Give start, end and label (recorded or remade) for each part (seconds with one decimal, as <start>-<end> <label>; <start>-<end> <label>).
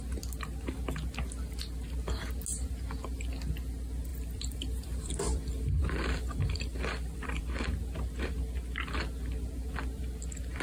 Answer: 0.0-4.1 recorded; 4.1-7.4 remade; 7.4-10.6 recorded